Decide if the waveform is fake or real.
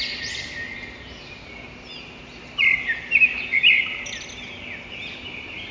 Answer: real